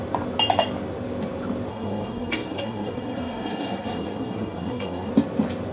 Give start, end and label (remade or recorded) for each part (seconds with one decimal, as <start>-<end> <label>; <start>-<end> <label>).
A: 0.0-1.7 recorded; 1.7-5.1 remade; 5.1-5.7 recorded